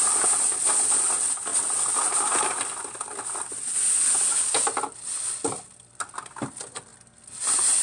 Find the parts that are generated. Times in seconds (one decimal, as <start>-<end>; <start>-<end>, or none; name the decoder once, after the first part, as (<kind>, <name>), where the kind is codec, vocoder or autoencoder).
none